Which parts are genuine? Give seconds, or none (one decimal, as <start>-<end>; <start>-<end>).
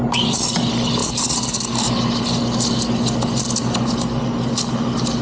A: 0.0-5.2